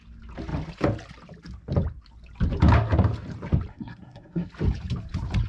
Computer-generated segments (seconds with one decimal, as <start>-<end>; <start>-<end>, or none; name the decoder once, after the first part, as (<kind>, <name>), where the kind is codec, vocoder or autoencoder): 3.7-4.5 (codec, SNAC)

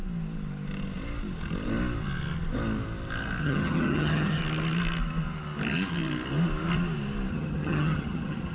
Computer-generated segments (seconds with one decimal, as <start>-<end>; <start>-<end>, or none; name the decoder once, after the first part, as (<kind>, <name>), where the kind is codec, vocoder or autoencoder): 3.4-4.4 (vocoder, HiFi-GAN); 7.3-8.5

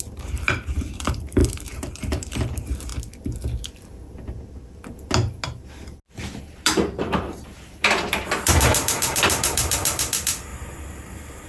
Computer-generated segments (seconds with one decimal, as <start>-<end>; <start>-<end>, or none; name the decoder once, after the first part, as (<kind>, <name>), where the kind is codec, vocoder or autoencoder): 0.0-2.9 (vocoder, BigVGAN v2); 6.4-10.5; 11.0-11.5

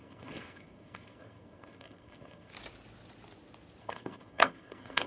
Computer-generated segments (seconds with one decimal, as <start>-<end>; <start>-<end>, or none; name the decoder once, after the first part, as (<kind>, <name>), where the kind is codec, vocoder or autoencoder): 0.0-2.5 (codec, SNAC); 3.8-5.1

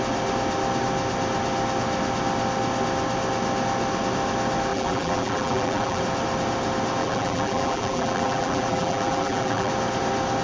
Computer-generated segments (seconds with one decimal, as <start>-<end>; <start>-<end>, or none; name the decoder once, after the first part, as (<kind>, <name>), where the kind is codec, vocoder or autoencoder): 4.7-6.0 (vocoder, BigVGAN v2); 7.0-9.7

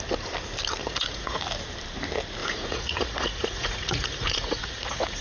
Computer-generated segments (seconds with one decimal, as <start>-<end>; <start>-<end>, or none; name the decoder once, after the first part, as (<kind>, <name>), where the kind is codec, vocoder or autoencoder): 0.8-1.4 (vocoder, Vocos); 2.4-5.2